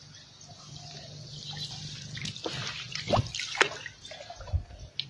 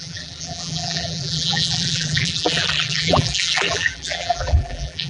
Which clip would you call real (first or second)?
first